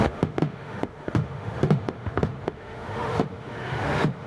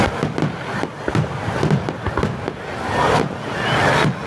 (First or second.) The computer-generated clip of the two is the first